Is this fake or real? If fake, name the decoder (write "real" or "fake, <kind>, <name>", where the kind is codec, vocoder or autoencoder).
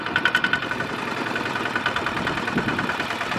real